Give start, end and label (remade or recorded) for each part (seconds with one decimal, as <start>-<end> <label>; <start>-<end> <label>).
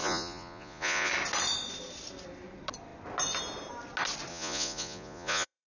0.0-1.1 remade; 1.1-4.3 recorded; 4.3-5.7 remade